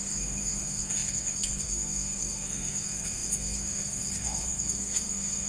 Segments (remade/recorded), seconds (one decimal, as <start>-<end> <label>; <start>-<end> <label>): 0.0-5.5 remade

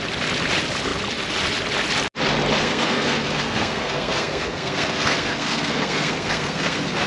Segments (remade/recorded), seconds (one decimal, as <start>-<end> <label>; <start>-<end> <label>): 0.0-2.6 recorded; 2.6-7.1 remade